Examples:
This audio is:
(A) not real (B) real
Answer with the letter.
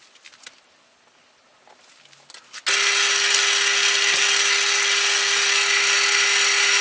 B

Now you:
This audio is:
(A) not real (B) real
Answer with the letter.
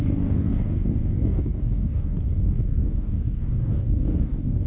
A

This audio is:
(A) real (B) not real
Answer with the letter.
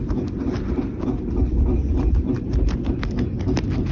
A